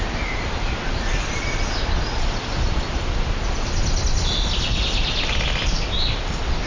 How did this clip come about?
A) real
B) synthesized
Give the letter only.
A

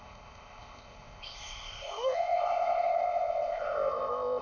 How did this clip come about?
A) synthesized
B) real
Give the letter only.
A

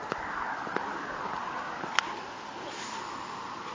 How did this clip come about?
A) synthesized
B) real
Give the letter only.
B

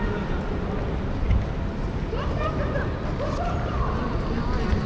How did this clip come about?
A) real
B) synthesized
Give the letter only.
A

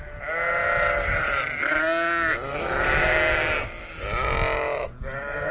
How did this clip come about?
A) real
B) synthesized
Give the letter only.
A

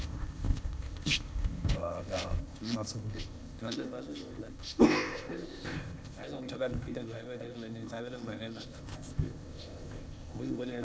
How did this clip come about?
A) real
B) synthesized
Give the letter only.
B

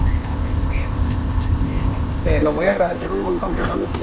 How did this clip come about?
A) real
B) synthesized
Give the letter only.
B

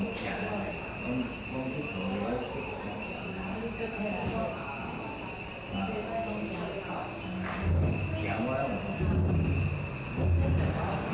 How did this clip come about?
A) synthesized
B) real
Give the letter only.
B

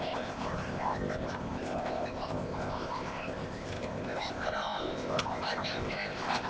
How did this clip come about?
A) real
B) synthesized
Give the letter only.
B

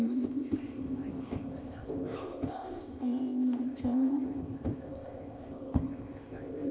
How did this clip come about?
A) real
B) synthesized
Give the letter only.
B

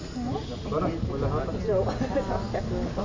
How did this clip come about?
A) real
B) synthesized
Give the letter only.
A